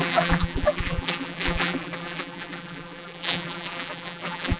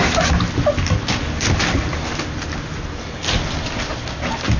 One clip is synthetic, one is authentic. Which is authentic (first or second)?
second